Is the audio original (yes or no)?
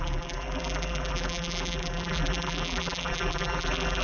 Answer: no